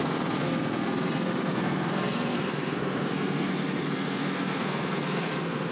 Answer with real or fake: fake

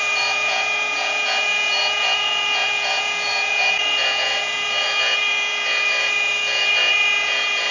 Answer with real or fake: fake